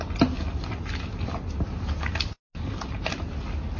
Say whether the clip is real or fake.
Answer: real